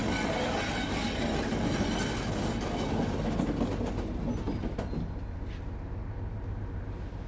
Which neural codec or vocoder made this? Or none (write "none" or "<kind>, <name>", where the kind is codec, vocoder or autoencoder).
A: none